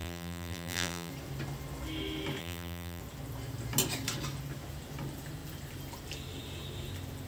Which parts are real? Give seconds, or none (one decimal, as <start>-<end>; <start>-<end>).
1.1-2.4; 3.0-7.3